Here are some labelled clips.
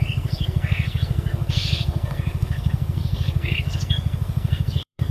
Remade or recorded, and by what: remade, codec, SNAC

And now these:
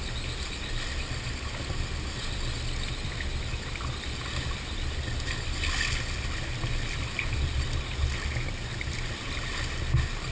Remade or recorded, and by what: recorded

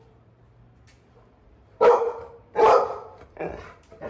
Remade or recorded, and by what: remade, vocoder, BigVGAN v2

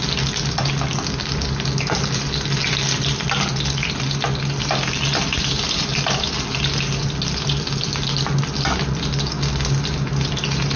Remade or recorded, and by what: recorded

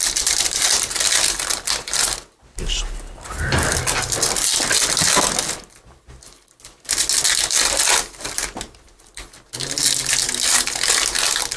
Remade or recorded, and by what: recorded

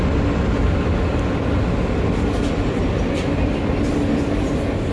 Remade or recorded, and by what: recorded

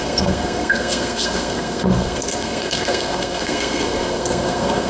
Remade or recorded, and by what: remade, codec, SNAC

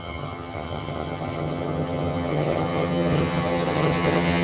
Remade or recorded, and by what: remade, vocoder, HiFi-GAN